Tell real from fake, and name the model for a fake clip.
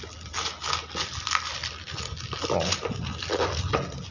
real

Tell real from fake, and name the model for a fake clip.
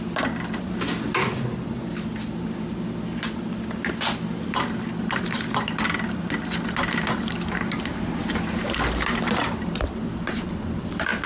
real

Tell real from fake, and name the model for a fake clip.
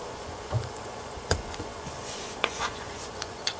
fake, vocoder, Vocos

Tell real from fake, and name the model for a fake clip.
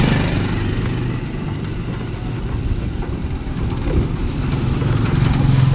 real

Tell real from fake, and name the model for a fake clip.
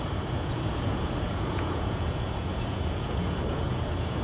fake, vocoder, Vocos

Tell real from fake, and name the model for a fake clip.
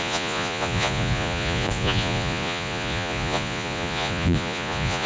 fake, vocoder, Vocos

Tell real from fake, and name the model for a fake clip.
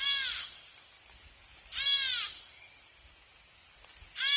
real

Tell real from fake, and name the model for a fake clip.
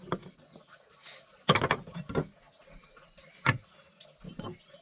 real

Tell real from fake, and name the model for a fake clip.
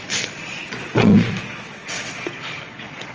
fake, vocoder, Vocos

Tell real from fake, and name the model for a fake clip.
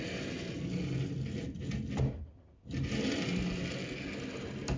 real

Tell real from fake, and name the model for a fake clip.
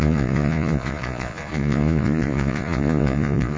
fake, vocoder, Vocos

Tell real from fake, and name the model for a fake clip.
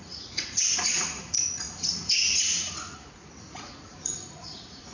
fake, vocoder, Vocos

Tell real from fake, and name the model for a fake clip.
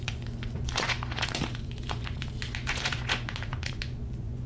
fake, vocoder, Vocos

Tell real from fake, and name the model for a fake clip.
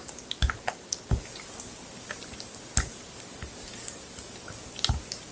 real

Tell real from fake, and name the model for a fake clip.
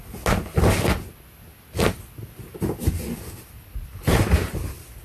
real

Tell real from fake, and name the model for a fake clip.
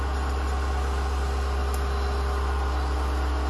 real